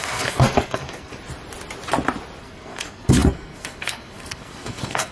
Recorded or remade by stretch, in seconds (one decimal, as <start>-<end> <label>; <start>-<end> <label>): 0.0-1.1 remade; 1.1-2.4 recorded; 2.4-5.1 remade